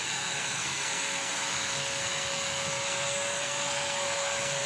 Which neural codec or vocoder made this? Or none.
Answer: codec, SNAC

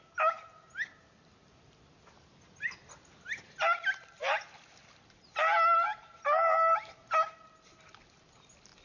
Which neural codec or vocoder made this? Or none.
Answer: none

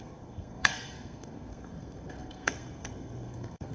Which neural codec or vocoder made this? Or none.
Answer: codec, SNAC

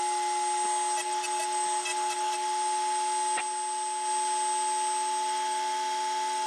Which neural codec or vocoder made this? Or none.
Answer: none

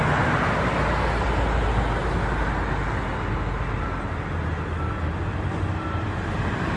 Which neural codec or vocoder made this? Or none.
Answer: none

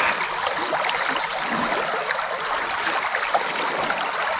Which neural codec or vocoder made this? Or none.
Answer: none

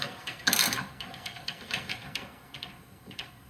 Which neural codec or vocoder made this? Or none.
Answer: codec, SNAC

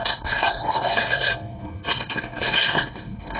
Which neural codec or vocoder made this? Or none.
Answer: codec, SNAC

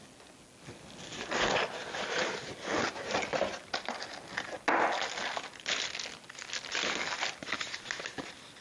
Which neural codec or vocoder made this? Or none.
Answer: none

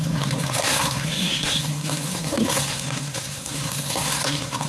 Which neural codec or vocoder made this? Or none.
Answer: codec, SNAC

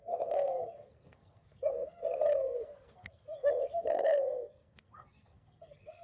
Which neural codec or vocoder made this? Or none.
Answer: codec, SNAC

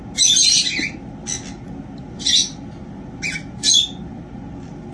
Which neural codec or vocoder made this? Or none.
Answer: none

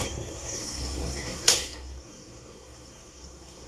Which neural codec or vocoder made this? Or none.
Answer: codec, SNAC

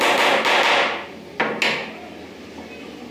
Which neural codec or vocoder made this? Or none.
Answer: none